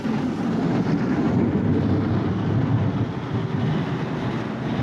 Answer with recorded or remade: recorded